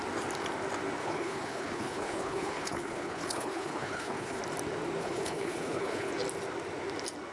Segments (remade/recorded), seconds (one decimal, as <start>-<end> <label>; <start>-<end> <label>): 0.0-1.0 recorded; 1.0-4.4 remade; 4.4-5.0 recorded; 5.0-6.1 remade; 6.1-7.3 recorded